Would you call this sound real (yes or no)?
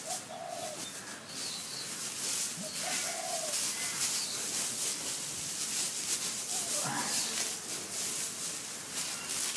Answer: yes